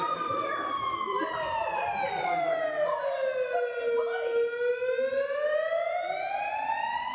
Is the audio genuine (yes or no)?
yes